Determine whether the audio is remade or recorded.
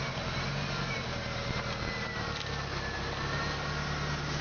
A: recorded